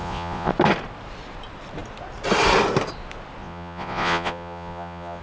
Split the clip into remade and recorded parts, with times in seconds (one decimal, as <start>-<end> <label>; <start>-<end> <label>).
0.0-0.5 remade; 0.5-3.4 recorded; 3.4-5.2 remade